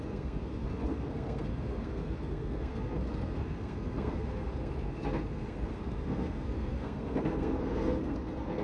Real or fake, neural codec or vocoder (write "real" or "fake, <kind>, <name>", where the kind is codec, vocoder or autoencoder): fake, codec, SNAC